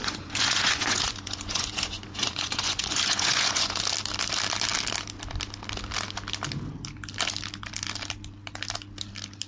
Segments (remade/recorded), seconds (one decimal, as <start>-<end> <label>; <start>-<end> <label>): 0.0-3.8 remade; 3.8-9.5 recorded